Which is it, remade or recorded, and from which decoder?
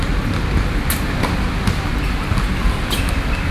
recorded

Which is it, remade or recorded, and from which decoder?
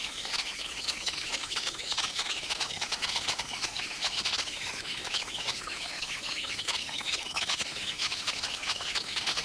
remade, autoencoder, DAC-VAE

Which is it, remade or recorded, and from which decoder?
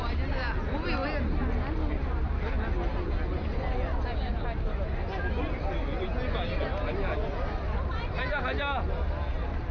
recorded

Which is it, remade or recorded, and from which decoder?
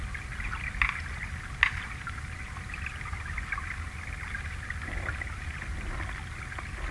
recorded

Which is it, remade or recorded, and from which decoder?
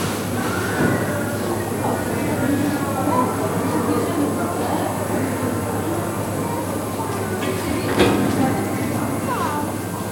recorded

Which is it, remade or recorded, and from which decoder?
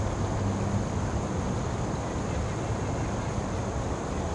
recorded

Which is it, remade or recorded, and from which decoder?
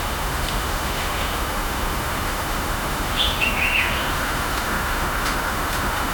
remade, autoencoder, DAC-VAE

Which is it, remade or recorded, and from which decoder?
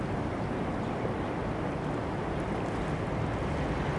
recorded